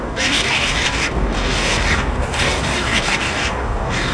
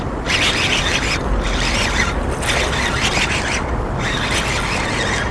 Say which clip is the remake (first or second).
first